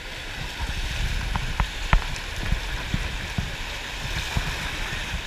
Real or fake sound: fake